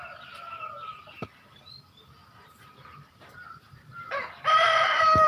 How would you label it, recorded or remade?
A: remade